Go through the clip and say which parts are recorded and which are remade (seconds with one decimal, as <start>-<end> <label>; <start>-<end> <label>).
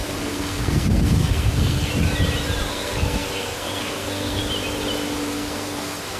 0.0-1.9 remade; 1.9-2.7 recorded; 2.7-4.4 remade; 4.4-5.3 recorded; 5.3-6.2 remade